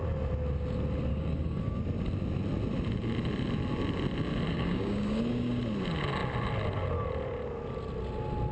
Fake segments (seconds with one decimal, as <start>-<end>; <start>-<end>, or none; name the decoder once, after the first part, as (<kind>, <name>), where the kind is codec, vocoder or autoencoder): 1.1-1.8 (codec, DAC); 4.5-5.6